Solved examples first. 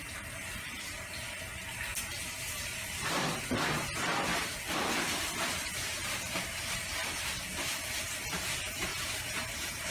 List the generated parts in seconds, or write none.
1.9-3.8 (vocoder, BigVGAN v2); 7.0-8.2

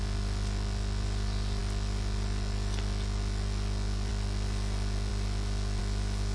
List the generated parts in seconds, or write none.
none

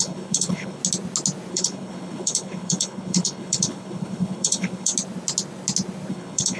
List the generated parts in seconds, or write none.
0.0-0.8 (codec, HILCodec); 1.5-4.9; 6.1-6.6

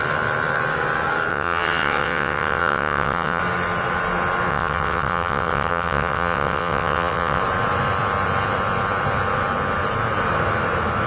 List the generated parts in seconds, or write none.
1.3-3.4 (vocoder, WaveNeXt); 4.5-7.4